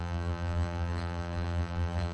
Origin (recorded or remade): remade